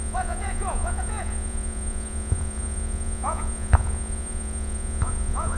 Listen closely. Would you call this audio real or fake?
fake